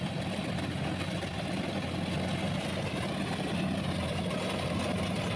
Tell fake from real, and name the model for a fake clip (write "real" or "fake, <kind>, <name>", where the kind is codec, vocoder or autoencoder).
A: real